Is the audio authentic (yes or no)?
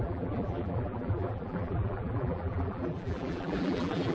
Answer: no